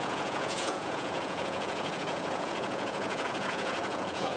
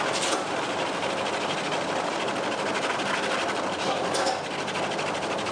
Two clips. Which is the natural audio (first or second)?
second